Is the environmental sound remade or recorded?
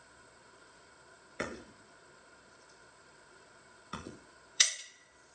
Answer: remade